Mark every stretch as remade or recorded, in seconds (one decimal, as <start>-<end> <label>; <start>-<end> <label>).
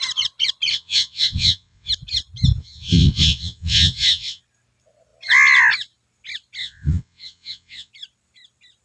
0.0-0.7 recorded; 0.7-1.9 remade; 1.9-2.6 recorded; 2.6-4.4 remade; 4.4-6.6 recorded; 6.6-7.9 remade; 7.9-8.8 recorded